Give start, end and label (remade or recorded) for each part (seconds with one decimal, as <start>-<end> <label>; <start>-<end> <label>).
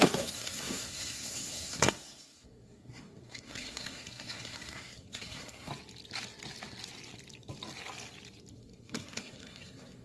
0.0-5.7 remade; 5.7-8.5 recorded; 8.5-10.0 remade